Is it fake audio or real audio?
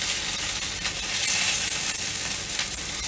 real